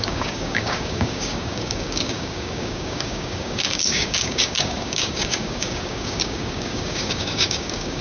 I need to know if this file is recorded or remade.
remade